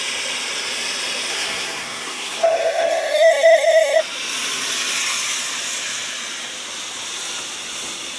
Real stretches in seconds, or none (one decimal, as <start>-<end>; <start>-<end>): 0.0-1.3; 4.0-8.2